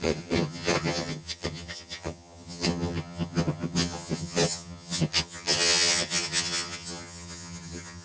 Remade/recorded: remade